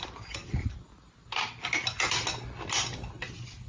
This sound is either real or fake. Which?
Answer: real